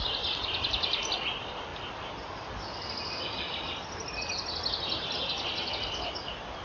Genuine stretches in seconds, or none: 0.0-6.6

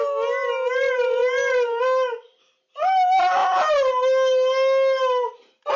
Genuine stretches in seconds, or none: 0.0-5.8

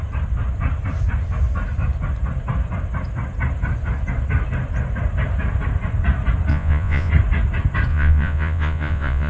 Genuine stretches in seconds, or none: 0.0-6.5; 7.1-7.9

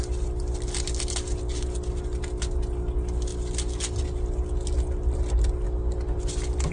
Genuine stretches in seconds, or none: 0.0-6.7

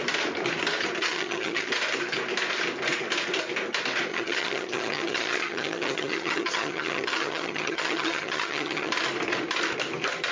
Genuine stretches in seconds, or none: 0.0-1.0; 1.7-4.1; 8.9-10.3

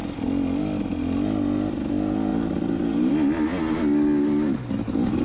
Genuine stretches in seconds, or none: 0.0-2.3; 3.1-5.2

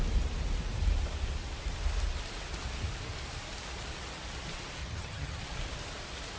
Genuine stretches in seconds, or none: 0.0-4.8; 5.4-6.4